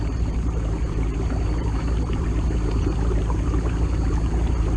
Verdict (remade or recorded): remade